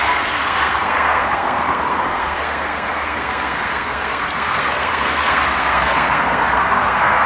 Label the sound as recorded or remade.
remade